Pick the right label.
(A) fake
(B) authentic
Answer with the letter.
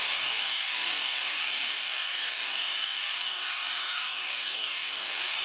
A